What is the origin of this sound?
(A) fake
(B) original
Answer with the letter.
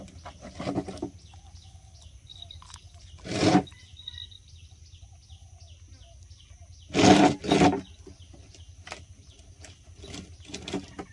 B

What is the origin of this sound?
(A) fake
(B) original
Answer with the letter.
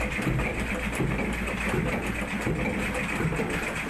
B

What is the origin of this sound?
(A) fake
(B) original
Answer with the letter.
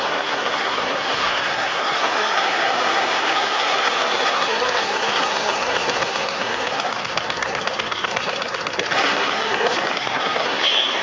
A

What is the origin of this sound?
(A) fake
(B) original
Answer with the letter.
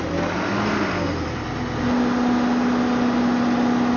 B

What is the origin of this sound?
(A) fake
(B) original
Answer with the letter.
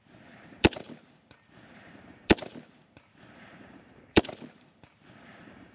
A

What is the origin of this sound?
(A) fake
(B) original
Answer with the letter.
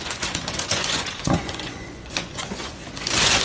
A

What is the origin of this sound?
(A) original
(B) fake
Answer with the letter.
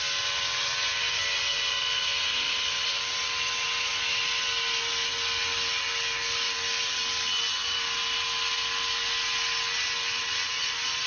A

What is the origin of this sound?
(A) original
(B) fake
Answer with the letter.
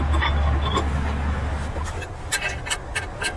A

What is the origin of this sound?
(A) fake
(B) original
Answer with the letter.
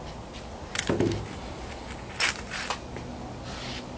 B